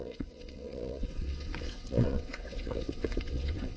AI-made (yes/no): yes